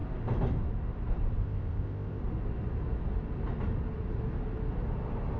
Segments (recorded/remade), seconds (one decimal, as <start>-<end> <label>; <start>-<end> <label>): 0.0-1.4 recorded; 1.4-2.2 remade; 2.2-5.4 recorded